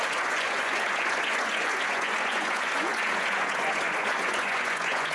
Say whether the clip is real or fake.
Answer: fake